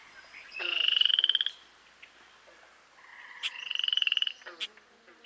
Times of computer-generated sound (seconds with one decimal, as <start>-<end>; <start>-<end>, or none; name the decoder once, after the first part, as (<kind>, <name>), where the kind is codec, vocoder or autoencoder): 0.0-1.1 (vocoder, Vocos); 3.1-3.7